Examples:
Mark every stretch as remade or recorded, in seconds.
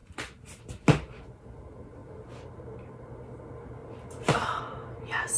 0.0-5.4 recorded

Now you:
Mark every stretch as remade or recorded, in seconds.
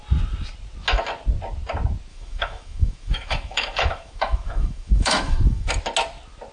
0.0-2.1 recorded; 2.1-5.7 remade; 5.7-6.5 recorded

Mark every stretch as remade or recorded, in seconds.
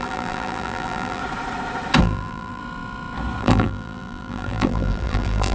0.0-1.2 remade; 1.2-2.0 recorded; 2.0-2.6 remade; 2.6-3.4 recorded; 3.4-5.5 remade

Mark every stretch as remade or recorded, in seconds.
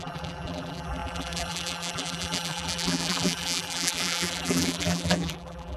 0.0-5.8 remade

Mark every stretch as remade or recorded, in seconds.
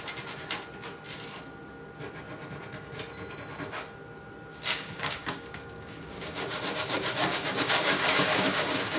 0.0-4.5 recorded; 4.5-9.0 remade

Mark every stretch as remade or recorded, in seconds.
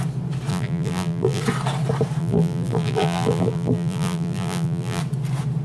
0.0-0.5 recorded; 0.5-1.4 remade; 1.4-2.2 recorded; 2.2-5.0 remade; 5.0-5.6 recorded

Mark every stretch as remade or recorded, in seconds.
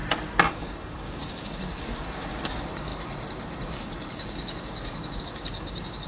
0.0-0.6 recorded; 0.6-6.1 remade